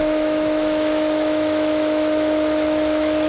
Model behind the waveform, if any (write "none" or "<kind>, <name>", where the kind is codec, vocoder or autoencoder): autoencoder, DAC-VAE